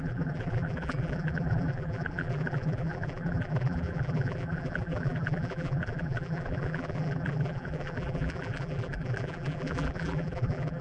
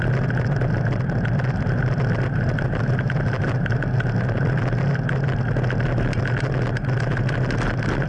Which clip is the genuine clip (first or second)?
second